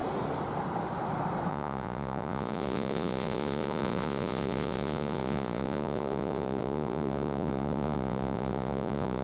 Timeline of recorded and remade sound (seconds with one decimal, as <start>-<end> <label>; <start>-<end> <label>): 0.0-1.5 recorded; 1.5-9.2 remade